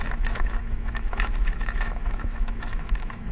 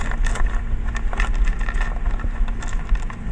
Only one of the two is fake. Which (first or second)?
first